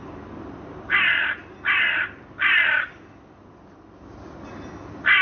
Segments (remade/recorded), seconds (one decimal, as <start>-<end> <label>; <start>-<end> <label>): 0.0-5.2 recorded